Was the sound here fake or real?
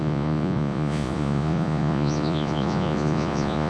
fake